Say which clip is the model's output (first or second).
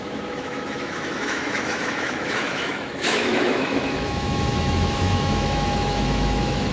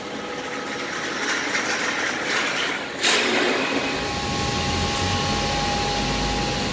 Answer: first